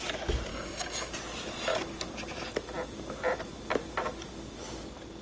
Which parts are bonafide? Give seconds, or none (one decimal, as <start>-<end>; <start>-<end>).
0.0-0.5; 1.1-5.2